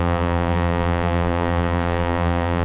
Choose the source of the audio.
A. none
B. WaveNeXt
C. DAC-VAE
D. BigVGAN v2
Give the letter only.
D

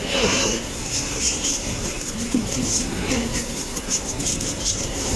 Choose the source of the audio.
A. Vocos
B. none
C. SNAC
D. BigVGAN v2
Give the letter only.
C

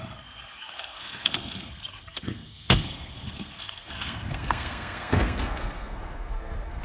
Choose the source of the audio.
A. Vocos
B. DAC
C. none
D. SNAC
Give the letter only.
D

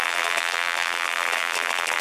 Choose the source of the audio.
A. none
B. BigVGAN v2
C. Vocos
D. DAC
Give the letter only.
B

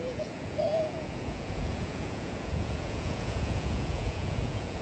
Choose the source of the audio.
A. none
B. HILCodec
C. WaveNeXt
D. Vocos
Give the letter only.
D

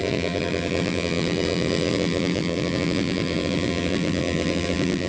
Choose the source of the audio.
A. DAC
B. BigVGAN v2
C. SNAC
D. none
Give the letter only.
B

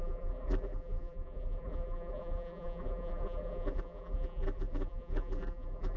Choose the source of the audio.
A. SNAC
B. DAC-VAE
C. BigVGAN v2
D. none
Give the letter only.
C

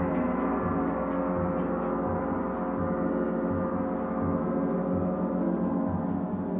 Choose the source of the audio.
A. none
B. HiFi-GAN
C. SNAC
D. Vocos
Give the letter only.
A